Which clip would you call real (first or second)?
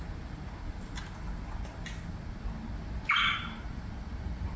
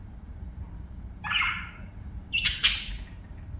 first